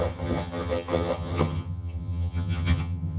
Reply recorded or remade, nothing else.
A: remade